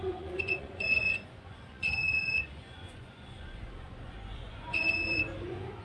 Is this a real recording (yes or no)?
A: no